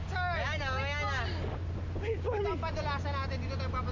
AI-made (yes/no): no